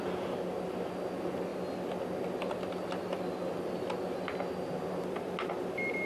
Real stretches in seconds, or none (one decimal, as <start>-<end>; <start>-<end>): 0.0-6.1